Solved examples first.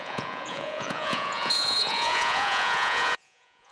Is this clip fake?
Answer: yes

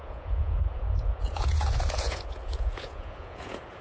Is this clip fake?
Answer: yes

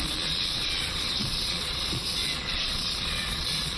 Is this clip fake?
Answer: yes